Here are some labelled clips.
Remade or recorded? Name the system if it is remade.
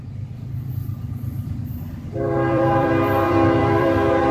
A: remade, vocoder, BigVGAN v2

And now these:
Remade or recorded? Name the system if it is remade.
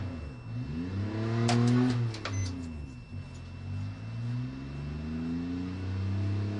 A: recorded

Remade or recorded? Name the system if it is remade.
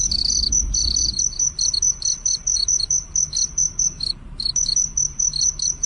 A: remade, vocoder, BigVGAN v2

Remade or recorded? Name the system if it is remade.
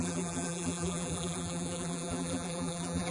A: remade, vocoder, BigVGAN v2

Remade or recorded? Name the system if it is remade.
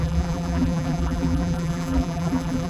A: remade, vocoder, BigVGAN v2